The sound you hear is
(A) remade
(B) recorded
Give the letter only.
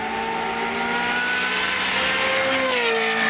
B